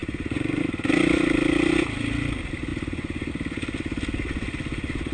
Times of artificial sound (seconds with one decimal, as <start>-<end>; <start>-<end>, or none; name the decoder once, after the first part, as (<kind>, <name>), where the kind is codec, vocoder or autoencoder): 0.0-0.6 (vocoder, Vocos); 2.7-3.3